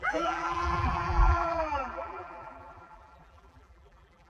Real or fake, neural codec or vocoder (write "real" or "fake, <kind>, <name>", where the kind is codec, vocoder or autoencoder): fake, vocoder, BigVGAN v2